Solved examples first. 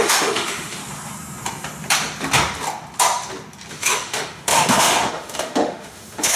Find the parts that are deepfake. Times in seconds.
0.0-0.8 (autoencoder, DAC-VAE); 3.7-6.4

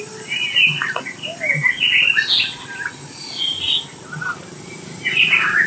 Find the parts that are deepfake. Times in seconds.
none

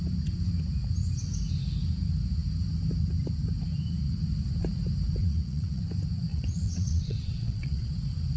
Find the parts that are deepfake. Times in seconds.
5.2-5.8 (vocoder, WaveNeXt); 6.3-7.9

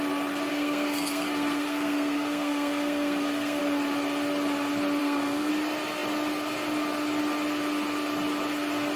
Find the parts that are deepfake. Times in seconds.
0.5-3.6 (codec, SNAC); 5.0-5.5

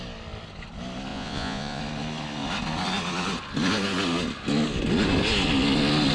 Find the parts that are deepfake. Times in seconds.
1.1-1.8 (vocoder, Vocos)

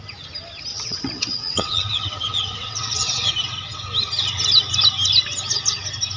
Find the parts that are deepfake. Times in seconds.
0.7-3.3 (vocoder, WaveNeXt)

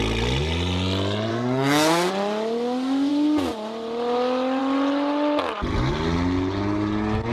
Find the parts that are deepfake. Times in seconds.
1.3-2.1 (codec, SNAC)

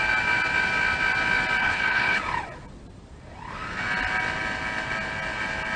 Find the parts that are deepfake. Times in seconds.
1.6-2.2 (codec, HILCodec)